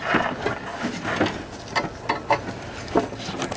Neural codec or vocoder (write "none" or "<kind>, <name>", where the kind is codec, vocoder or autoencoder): none